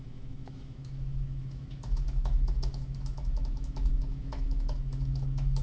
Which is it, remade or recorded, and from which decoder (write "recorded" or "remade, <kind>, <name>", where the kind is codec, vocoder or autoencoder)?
remade, autoencoder, DAC-VAE